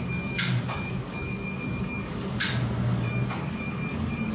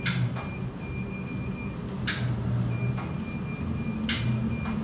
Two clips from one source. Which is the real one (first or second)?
second